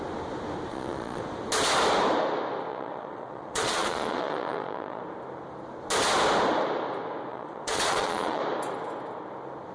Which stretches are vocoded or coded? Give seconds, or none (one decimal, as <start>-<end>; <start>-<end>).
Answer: 0.7-1.2; 2.7-5.0; 7.3-8.4